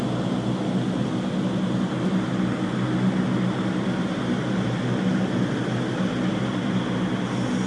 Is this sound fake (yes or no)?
no